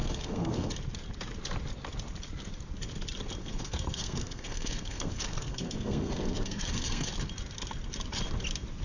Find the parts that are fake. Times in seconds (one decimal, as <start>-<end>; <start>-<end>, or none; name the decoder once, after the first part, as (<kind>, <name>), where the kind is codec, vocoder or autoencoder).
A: 0.0-0.7 (codec, SNAC); 3.4-7.1